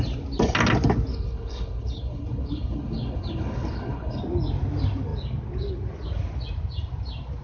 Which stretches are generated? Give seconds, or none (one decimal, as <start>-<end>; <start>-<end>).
1.1-4.2